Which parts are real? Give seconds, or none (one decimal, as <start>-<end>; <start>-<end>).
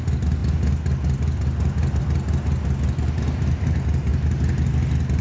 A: 0.0-5.2